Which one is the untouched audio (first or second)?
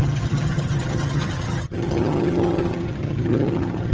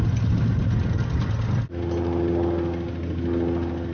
second